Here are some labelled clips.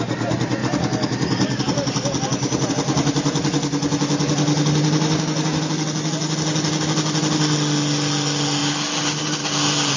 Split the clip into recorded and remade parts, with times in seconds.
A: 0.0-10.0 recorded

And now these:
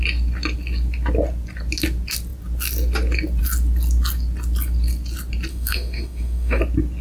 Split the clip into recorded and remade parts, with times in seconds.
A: 0.0-5.5 recorded; 5.5-6.6 remade; 6.6-7.0 recorded

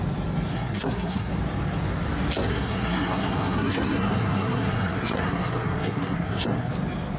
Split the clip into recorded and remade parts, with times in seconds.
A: 0.0-0.5 recorded; 0.5-1.3 remade; 1.3-2.4 recorded; 2.4-6.7 remade; 6.7-7.2 recorded

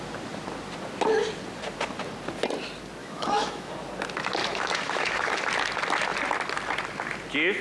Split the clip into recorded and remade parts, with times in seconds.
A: 0.0-3.0 recorded; 3.0-3.7 remade; 3.7-4.4 recorded; 4.4-5.4 remade; 5.4-7.6 recorded

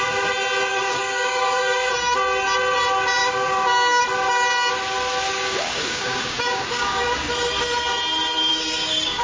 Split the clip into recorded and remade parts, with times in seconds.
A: 0.0-0.7 recorded; 0.7-1.9 remade; 1.9-3.2 recorded; 3.2-4.0 remade; 4.0-5.3 recorded; 5.3-7.3 remade; 7.3-8.5 recorded; 8.5-9.2 remade